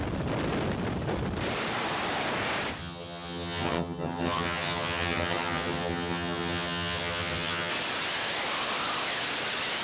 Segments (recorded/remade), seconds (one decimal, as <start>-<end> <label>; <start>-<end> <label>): 0.0-2.8 recorded; 2.8-7.7 remade; 7.7-9.8 recorded